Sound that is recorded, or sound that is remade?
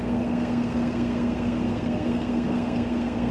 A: remade